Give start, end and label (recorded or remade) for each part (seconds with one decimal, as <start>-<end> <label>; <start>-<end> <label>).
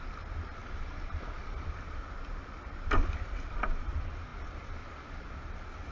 0.0-5.9 recorded